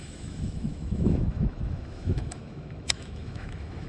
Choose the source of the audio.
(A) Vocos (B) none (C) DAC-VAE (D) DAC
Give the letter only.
C